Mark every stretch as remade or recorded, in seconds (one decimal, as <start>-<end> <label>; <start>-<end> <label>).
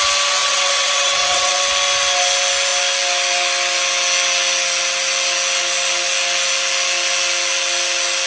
0.0-0.4 recorded; 0.4-1.5 remade; 1.5-8.3 recorded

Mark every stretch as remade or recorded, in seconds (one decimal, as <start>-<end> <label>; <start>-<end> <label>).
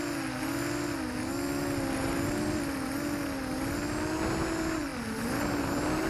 0.0-6.1 recorded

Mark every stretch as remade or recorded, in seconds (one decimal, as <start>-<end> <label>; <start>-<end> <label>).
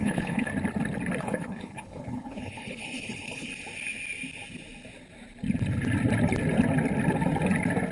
0.0-0.5 remade; 0.5-1.2 recorded; 1.2-3.5 remade; 3.5-7.9 recorded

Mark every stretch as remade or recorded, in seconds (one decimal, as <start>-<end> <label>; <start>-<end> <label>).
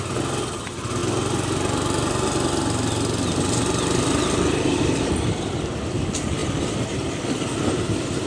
0.0-8.3 recorded